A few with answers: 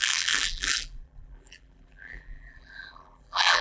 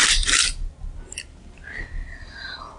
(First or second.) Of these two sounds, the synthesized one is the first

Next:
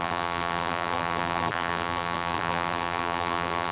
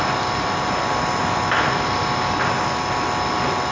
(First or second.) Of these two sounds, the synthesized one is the first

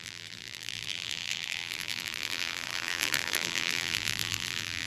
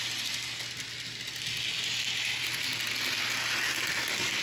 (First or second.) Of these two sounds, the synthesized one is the first